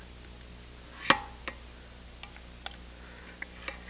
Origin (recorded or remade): recorded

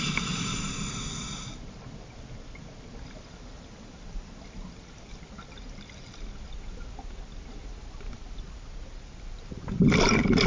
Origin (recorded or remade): recorded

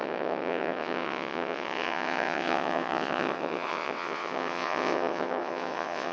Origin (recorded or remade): remade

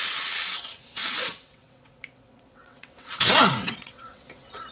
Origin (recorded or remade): remade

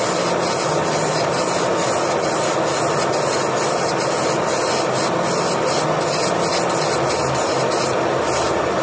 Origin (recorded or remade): recorded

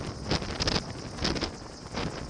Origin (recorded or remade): recorded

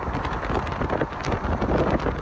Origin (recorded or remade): recorded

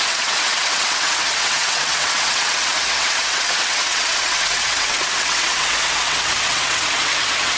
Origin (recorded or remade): remade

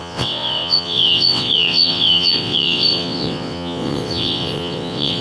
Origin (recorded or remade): remade